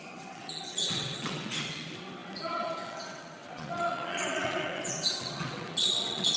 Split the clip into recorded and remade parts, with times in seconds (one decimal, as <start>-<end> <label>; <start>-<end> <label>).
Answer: 0.0-6.4 remade

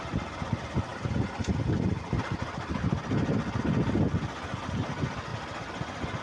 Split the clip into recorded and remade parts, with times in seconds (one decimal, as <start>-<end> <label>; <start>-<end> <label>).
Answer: 0.0-6.2 recorded

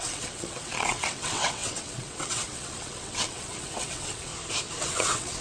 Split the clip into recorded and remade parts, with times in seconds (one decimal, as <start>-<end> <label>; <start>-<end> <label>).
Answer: 0.0-4.3 remade; 4.3-4.8 recorded; 4.8-5.4 remade

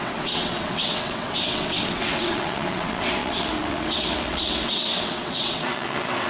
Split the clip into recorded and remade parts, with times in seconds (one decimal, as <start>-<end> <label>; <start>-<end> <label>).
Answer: 0.0-6.3 remade

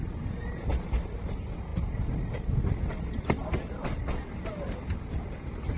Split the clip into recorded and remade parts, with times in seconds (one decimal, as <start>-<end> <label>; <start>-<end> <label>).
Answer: 0.0-5.8 recorded